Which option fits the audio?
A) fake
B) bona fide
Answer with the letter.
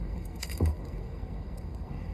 A